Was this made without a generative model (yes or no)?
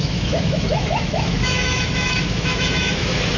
no